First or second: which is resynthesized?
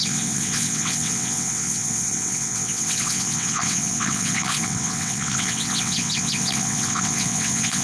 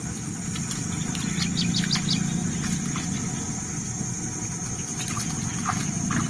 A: first